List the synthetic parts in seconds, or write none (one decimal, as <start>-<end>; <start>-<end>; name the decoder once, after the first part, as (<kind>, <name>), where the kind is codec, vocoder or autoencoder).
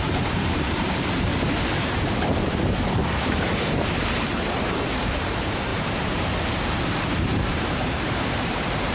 0.0-1.3 (vocoder, BigVGAN v2); 1.8-8.9